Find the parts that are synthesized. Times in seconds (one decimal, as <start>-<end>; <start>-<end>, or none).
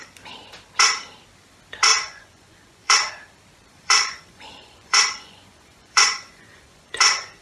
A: 1.9-3.1; 3.6-7.4